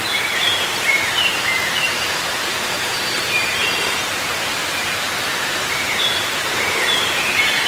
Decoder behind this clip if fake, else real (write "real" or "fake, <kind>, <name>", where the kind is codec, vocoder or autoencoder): fake, vocoder, BigVGAN v2